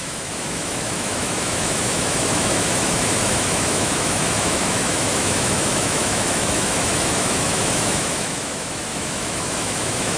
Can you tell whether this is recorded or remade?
remade